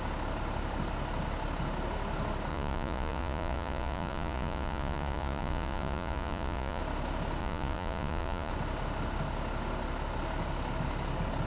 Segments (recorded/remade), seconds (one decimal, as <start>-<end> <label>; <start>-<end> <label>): 0.0-2.5 recorded; 2.5-6.8 remade; 6.8-7.4 recorded; 7.4-8.5 remade; 8.5-11.5 recorded